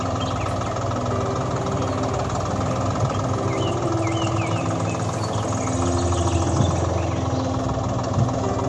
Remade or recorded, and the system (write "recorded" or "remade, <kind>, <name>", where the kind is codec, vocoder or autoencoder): recorded